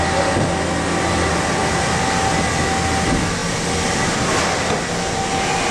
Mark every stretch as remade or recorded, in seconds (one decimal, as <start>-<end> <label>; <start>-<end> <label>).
0.0-5.7 recorded